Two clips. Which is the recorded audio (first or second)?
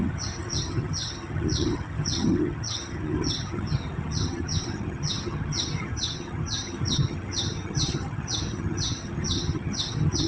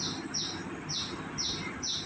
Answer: second